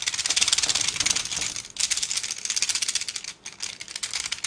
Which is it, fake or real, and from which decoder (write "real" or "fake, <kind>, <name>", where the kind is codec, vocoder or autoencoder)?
real